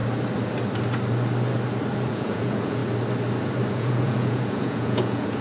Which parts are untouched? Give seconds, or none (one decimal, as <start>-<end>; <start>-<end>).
0.0-1.9; 2.8-3.7